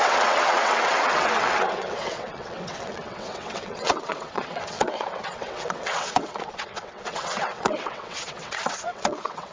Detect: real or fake fake